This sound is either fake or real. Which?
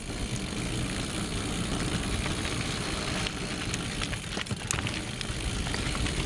real